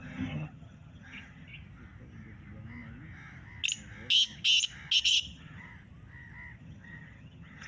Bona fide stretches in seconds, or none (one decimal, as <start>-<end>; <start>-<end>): 1.5-5.0; 5.7-6.6